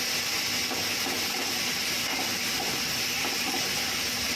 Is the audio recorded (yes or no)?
yes